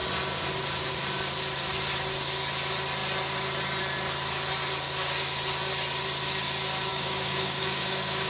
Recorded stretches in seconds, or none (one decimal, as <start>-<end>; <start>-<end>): 0.0-6.9